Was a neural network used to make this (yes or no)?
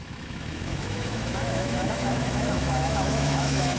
yes